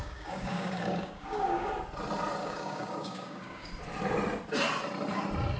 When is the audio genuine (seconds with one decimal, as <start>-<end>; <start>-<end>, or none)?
1.7-2.4; 3.7-5.6